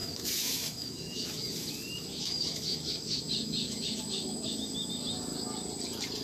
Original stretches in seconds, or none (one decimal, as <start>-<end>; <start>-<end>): 1.4-2.1; 4.9-6.2

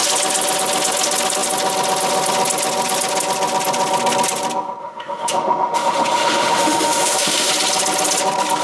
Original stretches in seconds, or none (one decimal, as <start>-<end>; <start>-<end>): 0.0-4.8; 7.5-8.6

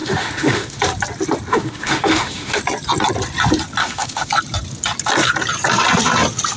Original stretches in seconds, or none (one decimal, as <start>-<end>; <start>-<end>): 0.8-1.5; 2.6-3.8; 4.3-6.6

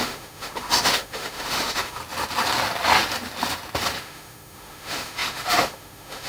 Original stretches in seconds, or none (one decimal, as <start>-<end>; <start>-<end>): 2.0-4.0

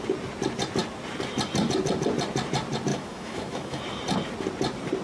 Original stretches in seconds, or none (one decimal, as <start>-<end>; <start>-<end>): 0.0-2.9; 3.8-5.0

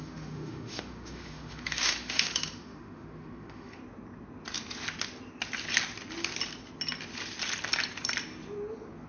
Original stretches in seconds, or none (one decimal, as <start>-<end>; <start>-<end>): 3.8-9.1

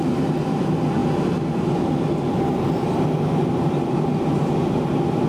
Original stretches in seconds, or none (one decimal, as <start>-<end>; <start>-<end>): 0.0-5.3